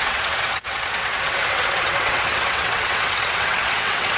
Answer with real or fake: fake